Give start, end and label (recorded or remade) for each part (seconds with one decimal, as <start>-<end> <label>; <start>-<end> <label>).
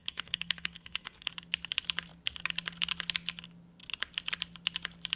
0.0-1.3 remade; 1.3-5.2 recorded